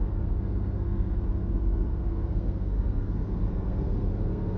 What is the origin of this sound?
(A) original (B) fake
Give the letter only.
B